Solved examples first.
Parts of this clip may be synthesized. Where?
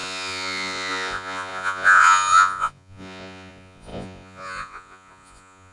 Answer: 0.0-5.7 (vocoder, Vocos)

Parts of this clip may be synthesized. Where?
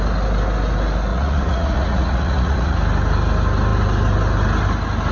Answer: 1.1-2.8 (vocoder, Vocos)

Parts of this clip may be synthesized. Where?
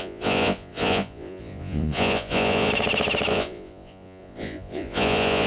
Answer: 0.0-2.7 (vocoder, Vocos); 3.3-5.5